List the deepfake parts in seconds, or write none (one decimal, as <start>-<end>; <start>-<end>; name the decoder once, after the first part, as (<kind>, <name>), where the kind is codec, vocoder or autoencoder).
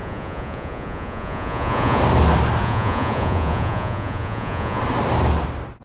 0.0-2.0 (vocoder, Vocos); 2.6-4.8